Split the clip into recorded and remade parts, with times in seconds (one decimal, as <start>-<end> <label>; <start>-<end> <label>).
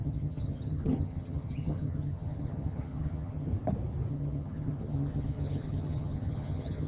0.0-3.5 remade; 3.5-4.1 recorded; 4.1-6.9 remade